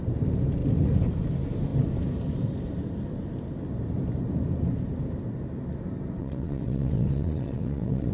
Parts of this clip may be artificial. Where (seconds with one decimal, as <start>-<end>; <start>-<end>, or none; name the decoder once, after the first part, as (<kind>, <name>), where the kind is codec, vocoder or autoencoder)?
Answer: 6.2-8.1 (vocoder, WaveNeXt)